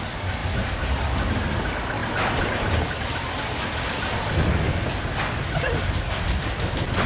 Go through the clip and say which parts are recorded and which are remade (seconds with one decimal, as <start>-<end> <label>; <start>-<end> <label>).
0.0-7.1 recorded

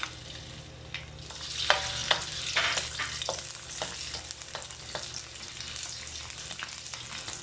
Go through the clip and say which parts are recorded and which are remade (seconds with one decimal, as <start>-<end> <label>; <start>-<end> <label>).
0.0-7.4 recorded

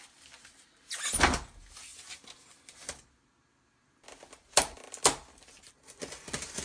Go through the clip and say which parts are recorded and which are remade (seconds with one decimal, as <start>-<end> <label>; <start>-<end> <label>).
0.0-6.6 recorded

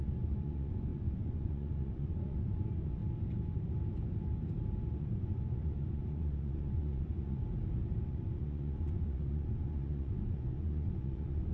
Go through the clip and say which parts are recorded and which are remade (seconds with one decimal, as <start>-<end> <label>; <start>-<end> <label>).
0.0-3.0 remade; 3.0-5.0 recorded; 5.0-7.4 remade; 7.4-8.0 recorded; 8.0-11.5 remade

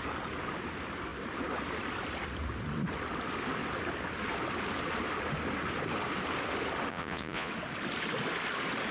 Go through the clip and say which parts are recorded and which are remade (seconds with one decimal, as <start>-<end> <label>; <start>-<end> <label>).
0.0-6.9 recorded; 6.9-7.5 remade; 7.5-8.9 recorded

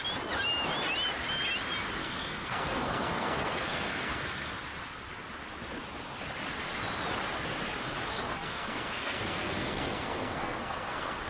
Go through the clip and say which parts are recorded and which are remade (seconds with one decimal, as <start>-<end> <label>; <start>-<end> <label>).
0.0-2.0 recorded; 2.0-4.5 remade; 4.5-8.1 recorded; 8.1-11.3 remade

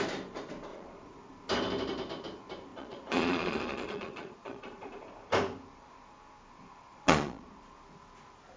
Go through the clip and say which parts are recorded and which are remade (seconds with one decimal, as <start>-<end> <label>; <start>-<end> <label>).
0.0-0.7 recorded; 0.7-1.3 remade; 1.3-2.7 recorded; 2.7-5.0 remade; 5.0-6.6 recorded; 6.6-7.6 remade; 7.6-8.6 recorded

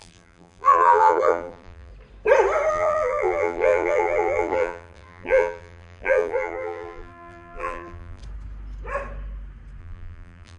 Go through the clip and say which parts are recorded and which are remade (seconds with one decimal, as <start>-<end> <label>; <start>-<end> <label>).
0.0-1.9 remade; 1.9-2.7 recorded; 2.7-8.2 remade; 8.2-9.8 recorded; 9.8-10.6 remade